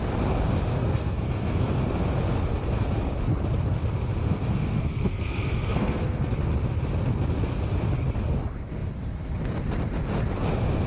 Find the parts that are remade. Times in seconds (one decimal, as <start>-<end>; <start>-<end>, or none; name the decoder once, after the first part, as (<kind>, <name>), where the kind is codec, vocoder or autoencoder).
0.7-1.7 (codec, SNAC); 4.2-6.2